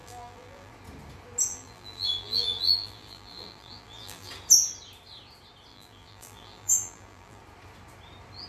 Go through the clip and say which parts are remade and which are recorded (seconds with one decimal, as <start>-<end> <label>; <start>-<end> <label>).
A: 0.0-0.7 remade; 0.7-1.5 recorded; 1.5-4.3 remade; 4.3-5.7 recorded; 5.7-7.4 remade; 7.4-8.5 recorded